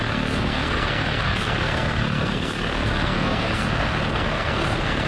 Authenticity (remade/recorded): remade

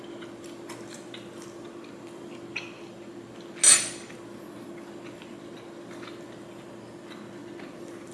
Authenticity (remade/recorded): recorded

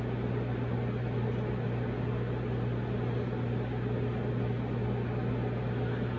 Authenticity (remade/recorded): recorded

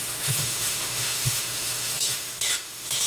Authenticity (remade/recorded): remade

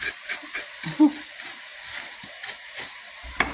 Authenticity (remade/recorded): remade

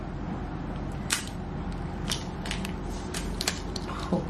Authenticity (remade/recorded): remade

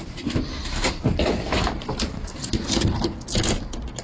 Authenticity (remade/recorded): recorded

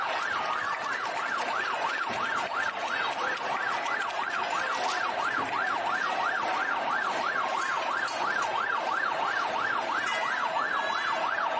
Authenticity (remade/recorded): recorded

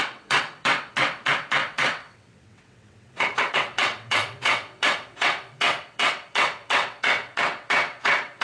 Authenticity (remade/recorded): remade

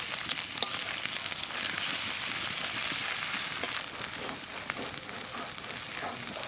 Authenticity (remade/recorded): recorded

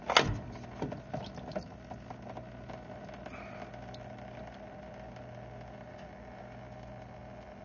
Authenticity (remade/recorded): recorded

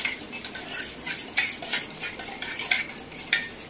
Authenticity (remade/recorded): recorded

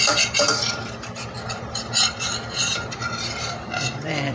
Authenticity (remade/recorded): remade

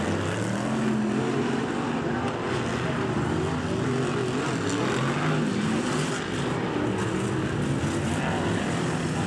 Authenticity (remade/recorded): recorded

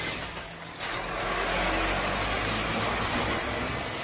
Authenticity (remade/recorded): recorded